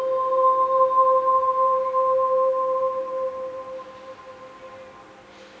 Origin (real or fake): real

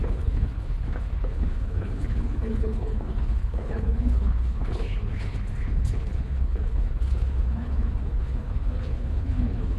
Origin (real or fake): fake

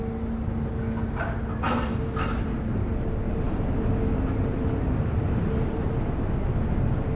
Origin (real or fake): real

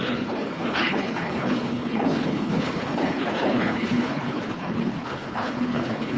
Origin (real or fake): fake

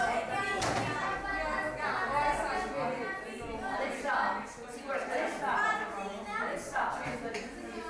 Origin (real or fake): real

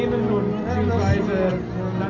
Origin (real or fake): real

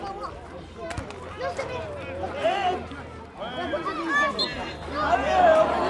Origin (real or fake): real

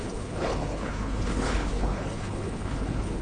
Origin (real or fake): fake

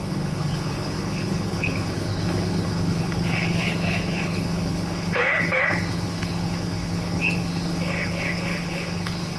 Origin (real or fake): fake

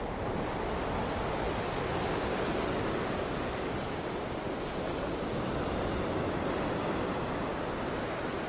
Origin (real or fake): real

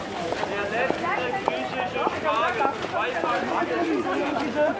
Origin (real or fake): real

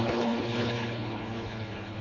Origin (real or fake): fake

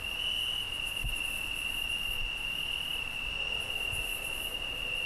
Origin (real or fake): real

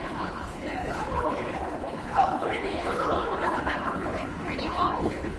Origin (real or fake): fake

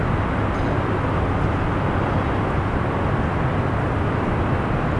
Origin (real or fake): real